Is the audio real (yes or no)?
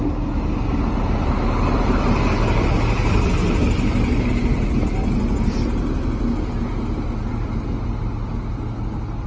yes